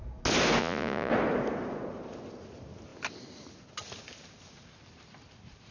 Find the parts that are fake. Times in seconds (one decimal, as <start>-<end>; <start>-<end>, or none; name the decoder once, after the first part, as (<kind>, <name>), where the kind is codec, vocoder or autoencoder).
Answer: 0.6-1.1 (vocoder, Vocos)